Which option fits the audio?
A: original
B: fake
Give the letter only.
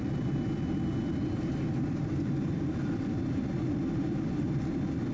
B